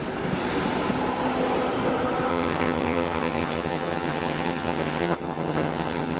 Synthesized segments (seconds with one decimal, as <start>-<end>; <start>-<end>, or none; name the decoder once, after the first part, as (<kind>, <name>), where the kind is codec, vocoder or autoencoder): 2.3-6.2 (vocoder, HiFi-GAN)